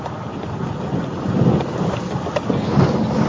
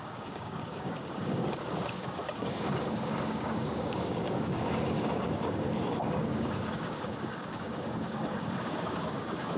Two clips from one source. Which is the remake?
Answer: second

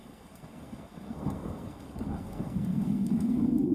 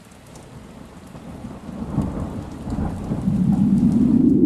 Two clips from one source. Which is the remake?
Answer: first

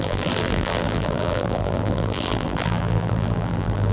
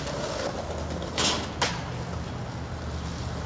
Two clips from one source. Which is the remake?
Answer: first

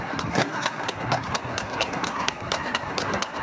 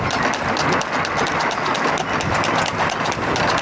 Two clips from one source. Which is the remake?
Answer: first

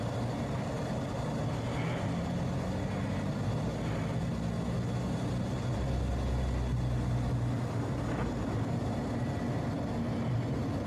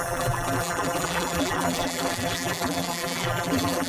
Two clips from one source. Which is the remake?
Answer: second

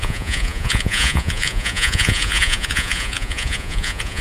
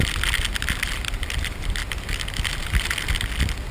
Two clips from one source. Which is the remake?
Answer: first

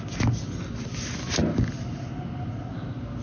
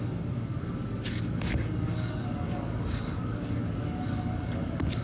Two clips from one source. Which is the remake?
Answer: second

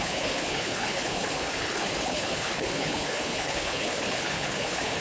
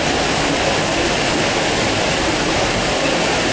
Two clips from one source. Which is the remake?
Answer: first